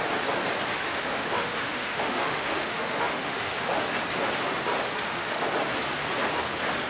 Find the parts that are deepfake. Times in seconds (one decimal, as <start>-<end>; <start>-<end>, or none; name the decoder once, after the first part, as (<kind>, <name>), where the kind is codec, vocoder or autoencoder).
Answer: 0.7-3.8 (autoencoder, DAC-VAE); 4.9-5.4